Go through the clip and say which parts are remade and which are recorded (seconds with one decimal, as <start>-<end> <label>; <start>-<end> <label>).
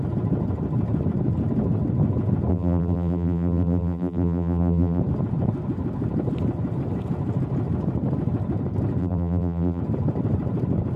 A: 0.0-2.5 recorded; 2.5-5.0 remade; 5.0-9.0 recorded; 9.0-9.8 remade; 9.8-11.0 recorded